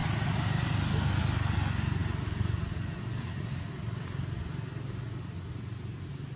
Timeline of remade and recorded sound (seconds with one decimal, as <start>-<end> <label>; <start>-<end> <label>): 0.0-6.4 recorded